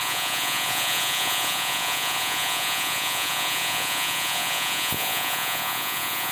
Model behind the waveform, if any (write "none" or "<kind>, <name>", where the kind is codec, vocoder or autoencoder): vocoder, Vocos